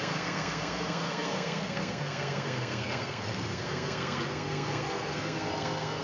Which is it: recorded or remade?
remade